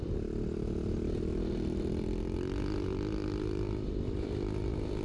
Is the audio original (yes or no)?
yes